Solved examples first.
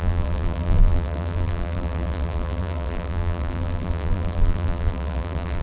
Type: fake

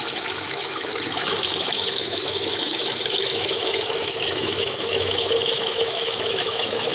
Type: fake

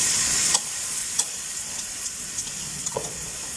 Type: fake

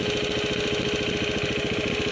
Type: real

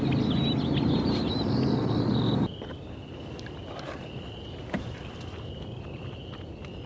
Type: real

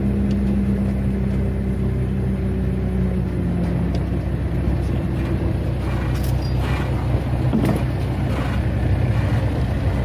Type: real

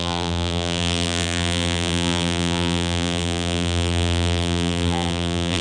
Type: fake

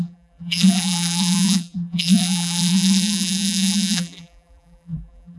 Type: fake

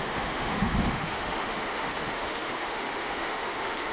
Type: fake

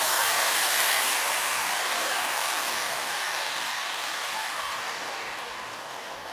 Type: fake